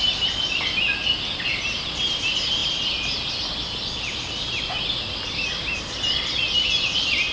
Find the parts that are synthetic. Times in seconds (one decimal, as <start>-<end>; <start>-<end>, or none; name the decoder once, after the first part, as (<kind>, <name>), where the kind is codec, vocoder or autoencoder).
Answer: none